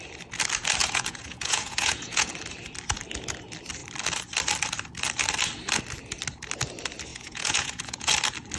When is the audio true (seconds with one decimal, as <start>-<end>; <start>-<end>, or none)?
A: 0.0-0.8; 2.3-7.1; 8.1-8.6